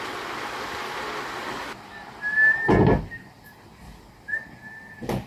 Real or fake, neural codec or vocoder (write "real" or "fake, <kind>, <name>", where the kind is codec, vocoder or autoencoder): real